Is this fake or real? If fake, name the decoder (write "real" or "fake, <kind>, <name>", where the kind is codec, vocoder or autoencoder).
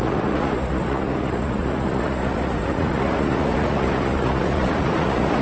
fake, vocoder, Vocos